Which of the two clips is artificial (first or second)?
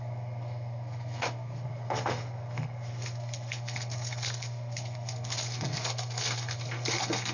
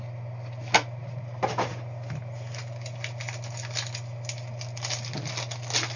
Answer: first